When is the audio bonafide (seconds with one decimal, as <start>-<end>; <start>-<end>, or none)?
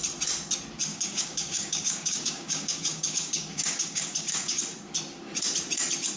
0.0-0.9; 4.6-6.2